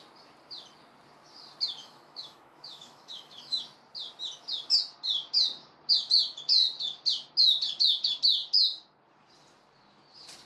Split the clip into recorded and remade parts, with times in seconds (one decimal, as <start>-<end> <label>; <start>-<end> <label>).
0.0-1.8 recorded; 1.8-3.6 remade; 3.6-10.5 recorded